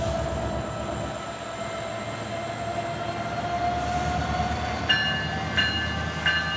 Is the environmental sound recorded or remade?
recorded